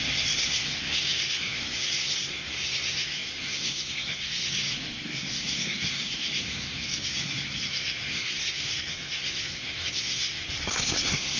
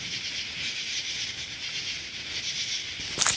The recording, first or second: second